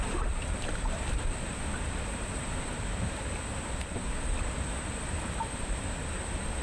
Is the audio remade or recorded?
recorded